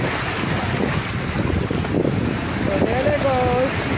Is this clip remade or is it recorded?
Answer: recorded